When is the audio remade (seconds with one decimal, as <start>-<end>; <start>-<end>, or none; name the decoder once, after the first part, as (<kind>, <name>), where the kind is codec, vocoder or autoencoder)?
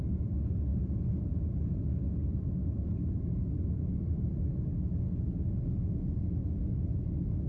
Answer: 2.6-5.6 (vocoder, BigVGAN v2); 6.4-7.1